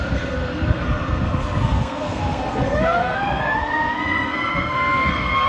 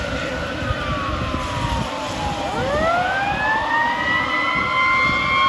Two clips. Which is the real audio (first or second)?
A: second